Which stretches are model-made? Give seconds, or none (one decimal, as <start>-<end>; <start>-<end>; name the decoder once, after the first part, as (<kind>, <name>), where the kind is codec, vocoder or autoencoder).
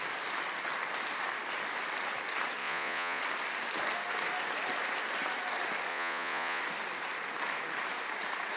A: 2.6-3.2 (vocoder, Vocos); 5.9-6.6